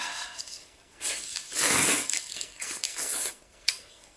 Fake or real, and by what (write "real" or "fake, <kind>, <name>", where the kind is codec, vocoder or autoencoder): fake, codec, SNAC